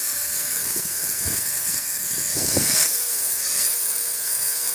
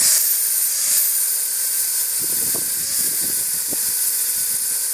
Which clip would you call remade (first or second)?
first